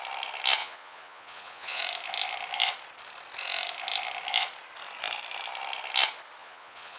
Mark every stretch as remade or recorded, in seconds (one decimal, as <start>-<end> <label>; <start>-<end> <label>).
0.0-0.6 recorded; 0.6-1.8 remade; 1.8-6.4 recorded; 6.4-7.0 remade